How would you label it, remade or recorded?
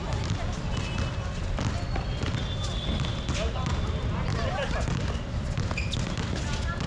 recorded